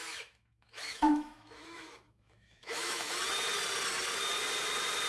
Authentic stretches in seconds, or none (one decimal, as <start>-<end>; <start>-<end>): 3.1-5.1